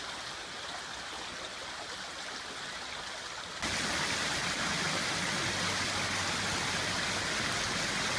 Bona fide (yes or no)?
yes